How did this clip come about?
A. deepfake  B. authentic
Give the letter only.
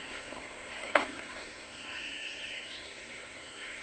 A